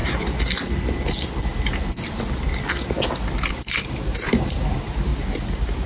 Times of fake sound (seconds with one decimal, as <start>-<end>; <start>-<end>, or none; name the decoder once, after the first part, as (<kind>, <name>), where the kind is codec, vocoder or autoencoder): 3.5-5.1 (vocoder, BigVGAN v2)